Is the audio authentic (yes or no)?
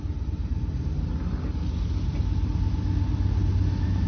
yes